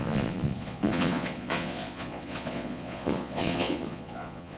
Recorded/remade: remade